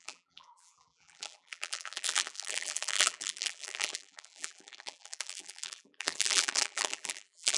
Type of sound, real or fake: fake